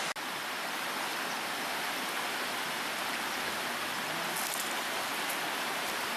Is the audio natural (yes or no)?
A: yes